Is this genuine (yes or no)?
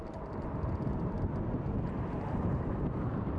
yes